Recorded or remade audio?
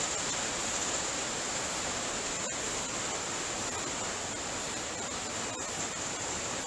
recorded